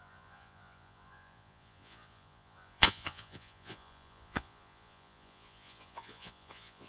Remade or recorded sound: remade